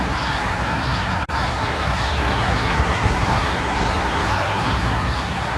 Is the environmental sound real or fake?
fake